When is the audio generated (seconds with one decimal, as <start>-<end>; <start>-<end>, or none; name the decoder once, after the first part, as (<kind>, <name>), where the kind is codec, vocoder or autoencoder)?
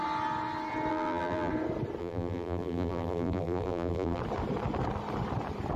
0.9-1.5 (vocoder, BigVGAN v2); 2.0-4.2